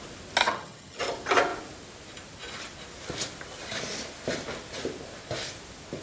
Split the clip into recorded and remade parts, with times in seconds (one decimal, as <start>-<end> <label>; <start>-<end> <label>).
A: 0.0-0.4 recorded; 0.4-1.0 remade; 1.0-6.0 recorded